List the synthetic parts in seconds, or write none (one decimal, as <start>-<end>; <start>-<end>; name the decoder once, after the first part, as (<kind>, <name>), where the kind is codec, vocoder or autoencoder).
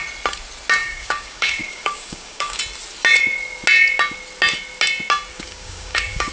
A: 0.8-2.6 (codec, DAC); 5.3-6.3